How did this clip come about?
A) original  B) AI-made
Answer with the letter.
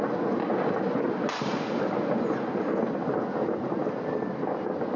A